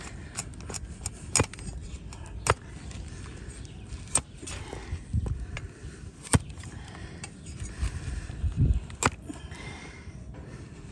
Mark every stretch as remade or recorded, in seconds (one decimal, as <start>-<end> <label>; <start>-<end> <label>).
0.0-7.0 recorded; 7.0-8.6 remade; 8.6-10.9 recorded